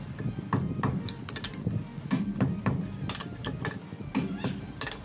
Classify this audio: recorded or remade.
remade